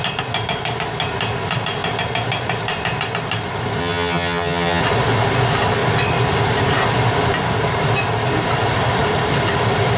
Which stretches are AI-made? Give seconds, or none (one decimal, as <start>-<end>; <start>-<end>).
3.8-4.8